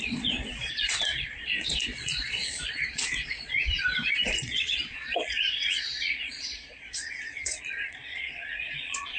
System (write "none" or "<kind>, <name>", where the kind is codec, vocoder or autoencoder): vocoder, Vocos